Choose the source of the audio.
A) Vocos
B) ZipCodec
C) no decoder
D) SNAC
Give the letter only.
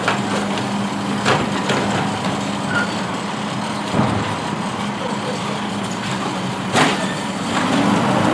C